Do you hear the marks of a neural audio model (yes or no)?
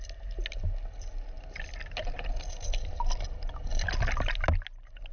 no